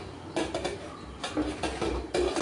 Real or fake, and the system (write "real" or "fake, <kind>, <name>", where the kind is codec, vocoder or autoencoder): real